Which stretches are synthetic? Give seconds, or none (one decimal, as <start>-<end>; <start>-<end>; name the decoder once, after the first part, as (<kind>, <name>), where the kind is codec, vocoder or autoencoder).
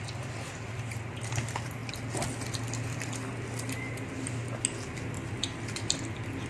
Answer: 1.8-3.1 (vocoder, BigVGAN v2)